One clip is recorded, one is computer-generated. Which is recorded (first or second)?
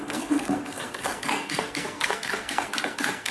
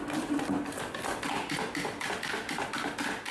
second